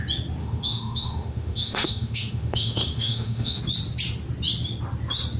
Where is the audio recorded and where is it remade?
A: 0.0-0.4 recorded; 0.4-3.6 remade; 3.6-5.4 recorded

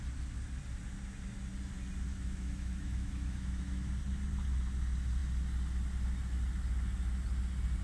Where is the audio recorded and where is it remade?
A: 0.0-2.1 recorded; 2.1-3.9 remade; 3.9-7.8 recorded